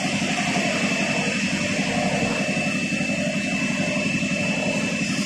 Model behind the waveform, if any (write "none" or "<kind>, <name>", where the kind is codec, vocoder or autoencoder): none